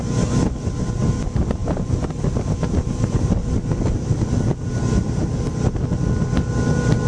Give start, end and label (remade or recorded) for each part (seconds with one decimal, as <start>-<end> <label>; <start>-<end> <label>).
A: 0.0-1.6 recorded; 1.6-3.2 remade; 3.2-7.1 recorded